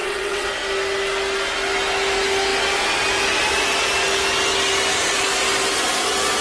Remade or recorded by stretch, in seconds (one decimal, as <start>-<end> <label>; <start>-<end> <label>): 0.0-0.5 remade; 0.5-6.4 recorded